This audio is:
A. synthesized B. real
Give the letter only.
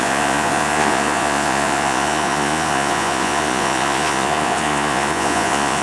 A